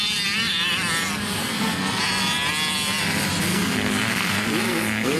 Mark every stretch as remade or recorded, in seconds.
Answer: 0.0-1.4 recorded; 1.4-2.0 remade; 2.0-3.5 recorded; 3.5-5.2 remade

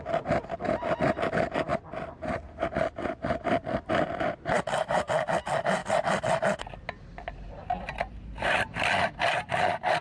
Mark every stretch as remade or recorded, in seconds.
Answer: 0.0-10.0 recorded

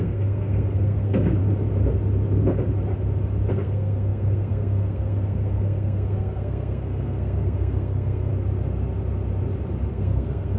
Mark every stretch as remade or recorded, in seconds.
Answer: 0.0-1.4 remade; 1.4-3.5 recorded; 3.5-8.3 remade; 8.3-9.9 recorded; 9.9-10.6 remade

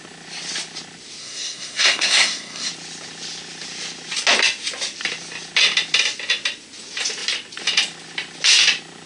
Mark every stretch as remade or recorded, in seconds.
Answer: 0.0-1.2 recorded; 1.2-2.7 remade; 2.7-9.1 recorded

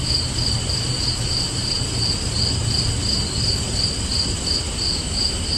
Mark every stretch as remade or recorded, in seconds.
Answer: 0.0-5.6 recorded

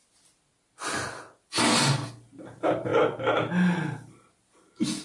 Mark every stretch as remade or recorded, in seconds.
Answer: 0.0-5.0 recorded